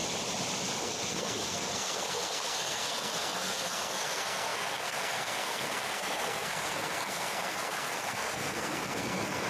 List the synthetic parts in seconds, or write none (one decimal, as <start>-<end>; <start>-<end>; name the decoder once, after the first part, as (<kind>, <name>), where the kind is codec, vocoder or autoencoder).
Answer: 0.8-9.5 (codec, SNAC)